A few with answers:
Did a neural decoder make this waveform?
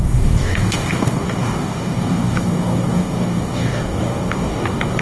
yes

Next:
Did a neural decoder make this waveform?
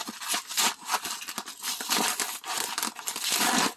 no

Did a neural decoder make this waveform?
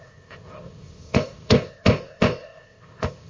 yes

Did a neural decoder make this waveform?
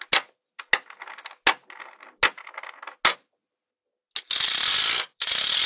no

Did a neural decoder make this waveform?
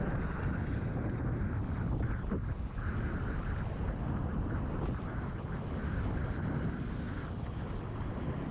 no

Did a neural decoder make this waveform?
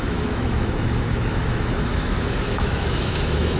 yes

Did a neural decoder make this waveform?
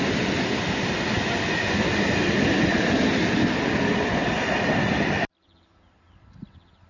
no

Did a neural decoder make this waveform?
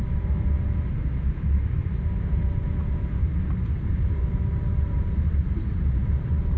yes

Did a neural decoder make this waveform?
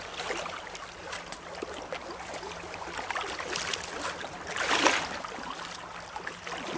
no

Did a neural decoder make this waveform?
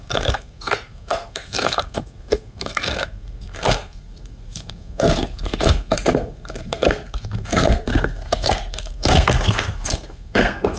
yes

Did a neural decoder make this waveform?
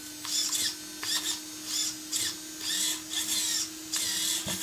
no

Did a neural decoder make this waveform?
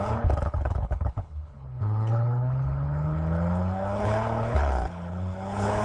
yes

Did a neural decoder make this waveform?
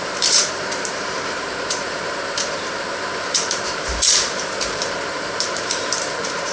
yes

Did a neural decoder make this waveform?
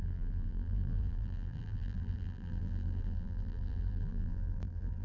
yes